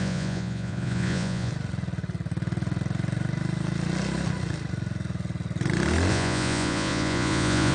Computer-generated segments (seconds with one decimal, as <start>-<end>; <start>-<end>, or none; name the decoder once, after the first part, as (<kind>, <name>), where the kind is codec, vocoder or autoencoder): 0.0-1.5 (vocoder, Vocos); 6.1-7.7